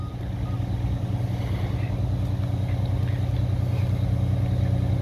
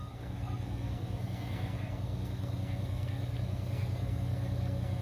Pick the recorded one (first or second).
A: first